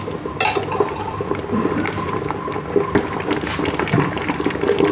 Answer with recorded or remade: recorded